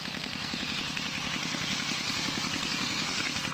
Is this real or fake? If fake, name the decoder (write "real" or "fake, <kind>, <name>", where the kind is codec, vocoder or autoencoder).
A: fake, codec, SNAC